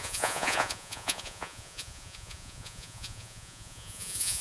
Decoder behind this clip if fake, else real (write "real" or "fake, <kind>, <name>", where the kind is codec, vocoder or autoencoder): fake, vocoder, Vocos